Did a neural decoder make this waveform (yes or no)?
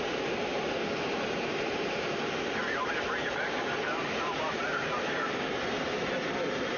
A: yes